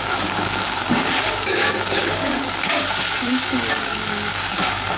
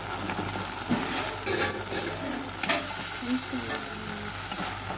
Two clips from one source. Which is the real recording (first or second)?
second